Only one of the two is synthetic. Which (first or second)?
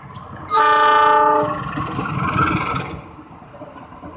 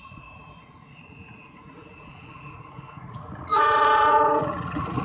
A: second